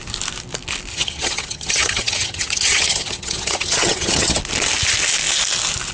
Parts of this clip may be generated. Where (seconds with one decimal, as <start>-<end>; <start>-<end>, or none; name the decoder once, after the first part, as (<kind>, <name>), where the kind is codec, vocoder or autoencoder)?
0.9-4.4 (vocoder, HiFi-GAN)